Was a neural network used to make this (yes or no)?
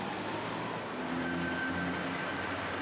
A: no